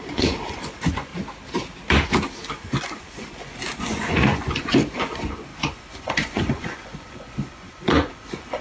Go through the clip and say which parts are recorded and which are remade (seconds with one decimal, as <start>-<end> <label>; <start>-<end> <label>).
0.0-1.1 remade; 1.1-2.5 recorded; 2.5-8.6 remade